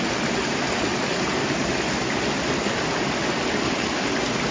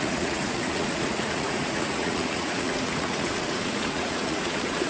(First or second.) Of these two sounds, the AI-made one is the second